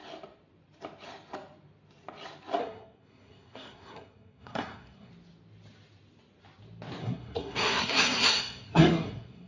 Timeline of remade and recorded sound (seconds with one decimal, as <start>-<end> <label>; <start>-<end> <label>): 0.0-2.6 recorded; 2.6-5.1 remade; 5.1-7.0 recorded; 7.0-9.5 remade